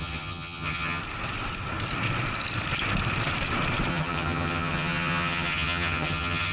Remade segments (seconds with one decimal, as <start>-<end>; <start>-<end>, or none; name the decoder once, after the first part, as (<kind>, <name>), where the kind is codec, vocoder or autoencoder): 0.0-1.0 (vocoder, HiFi-GAN); 3.9-6.5